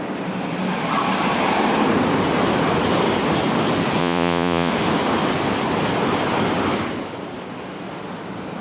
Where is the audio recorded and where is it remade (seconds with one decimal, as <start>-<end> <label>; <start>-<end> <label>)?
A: 0.0-4.0 recorded; 4.0-4.7 remade; 4.7-8.6 recorded

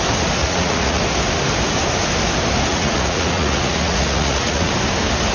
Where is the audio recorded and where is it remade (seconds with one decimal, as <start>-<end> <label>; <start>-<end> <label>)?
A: 0.0-0.4 recorded; 0.4-1.0 remade; 1.0-2.7 recorded; 2.7-4.7 remade; 4.7-5.3 recorded

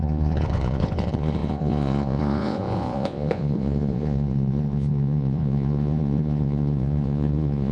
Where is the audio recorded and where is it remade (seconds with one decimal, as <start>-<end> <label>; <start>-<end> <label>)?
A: 0.0-7.7 remade